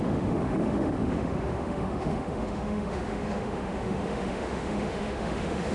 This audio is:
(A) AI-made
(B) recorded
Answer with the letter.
A